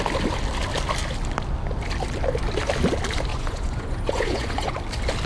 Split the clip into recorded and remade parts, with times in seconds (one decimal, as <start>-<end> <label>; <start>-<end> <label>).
0.0-3.3 recorded; 3.3-4.8 remade; 4.8-5.3 recorded